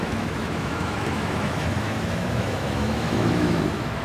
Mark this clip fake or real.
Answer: fake